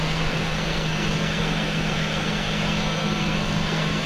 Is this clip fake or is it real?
fake